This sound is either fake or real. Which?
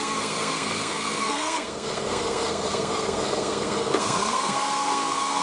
fake